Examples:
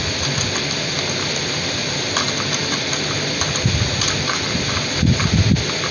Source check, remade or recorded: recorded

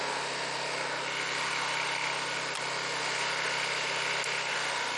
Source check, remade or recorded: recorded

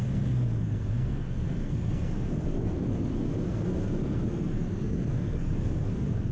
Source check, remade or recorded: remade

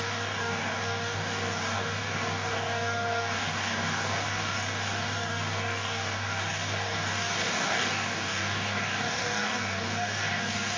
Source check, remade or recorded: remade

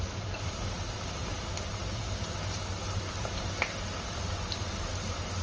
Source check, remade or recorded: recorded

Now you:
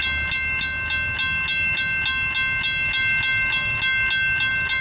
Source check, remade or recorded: recorded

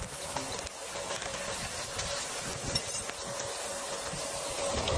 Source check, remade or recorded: recorded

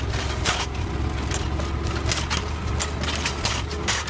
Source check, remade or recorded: recorded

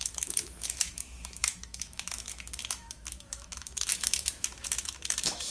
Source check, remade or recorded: remade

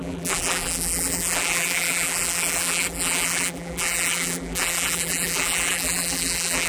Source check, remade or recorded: remade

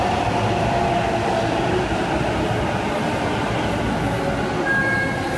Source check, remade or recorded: recorded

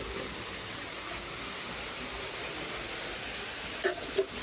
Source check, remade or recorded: recorded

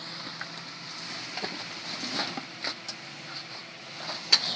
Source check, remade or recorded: recorded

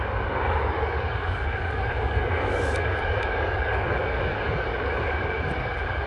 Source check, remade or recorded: remade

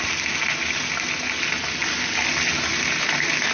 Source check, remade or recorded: recorded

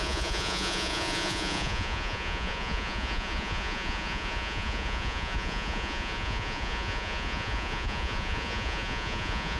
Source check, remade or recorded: remade